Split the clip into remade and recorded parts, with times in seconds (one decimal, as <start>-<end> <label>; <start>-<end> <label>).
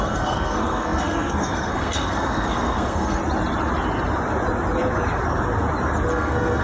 0.0-3.2 remade; 3.2-6.1 recorded; 6.1-6.6 remade